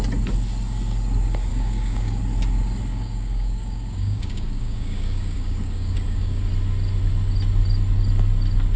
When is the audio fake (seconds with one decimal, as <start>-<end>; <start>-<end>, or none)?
1.5-2.2; 2.9-6.4